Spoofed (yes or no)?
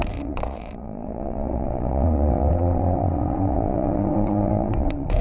yes